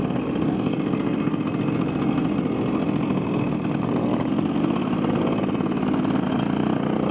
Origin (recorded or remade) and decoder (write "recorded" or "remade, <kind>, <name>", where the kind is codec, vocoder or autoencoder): recorded